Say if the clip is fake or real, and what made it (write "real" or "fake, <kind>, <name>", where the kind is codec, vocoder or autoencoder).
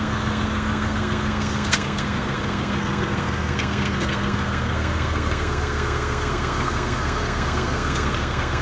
fake, codec, SNAC